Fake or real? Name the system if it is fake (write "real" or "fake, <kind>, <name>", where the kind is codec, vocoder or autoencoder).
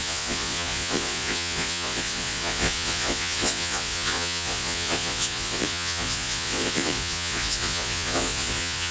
fake, vocoder, Vocos